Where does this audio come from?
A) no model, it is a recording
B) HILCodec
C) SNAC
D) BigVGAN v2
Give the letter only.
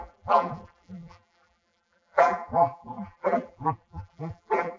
D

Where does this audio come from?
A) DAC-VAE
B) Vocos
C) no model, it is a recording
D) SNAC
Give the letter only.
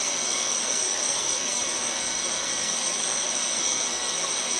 D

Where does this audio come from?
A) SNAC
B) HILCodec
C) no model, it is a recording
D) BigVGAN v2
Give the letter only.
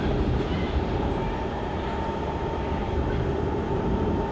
D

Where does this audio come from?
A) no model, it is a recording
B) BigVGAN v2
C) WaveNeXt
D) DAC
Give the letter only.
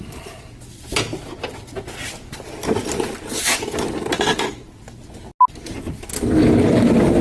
A